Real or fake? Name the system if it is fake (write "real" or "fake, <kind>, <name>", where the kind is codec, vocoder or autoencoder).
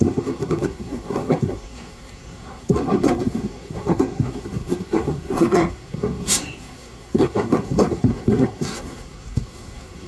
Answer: fake, codec, SNAC